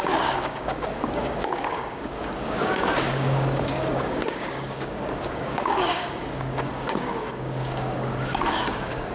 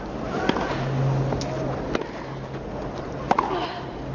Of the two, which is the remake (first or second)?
first